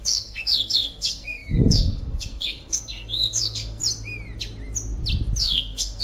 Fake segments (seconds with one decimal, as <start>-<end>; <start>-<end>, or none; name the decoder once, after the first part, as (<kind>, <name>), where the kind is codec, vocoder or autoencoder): 0.0-3.8 (codec, SNAC); 5.4-6.0